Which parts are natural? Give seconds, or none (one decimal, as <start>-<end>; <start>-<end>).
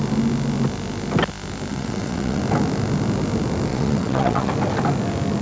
0.0-1.7; 2.4-3.7; 4.5-5.4